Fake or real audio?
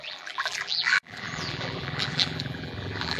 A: fake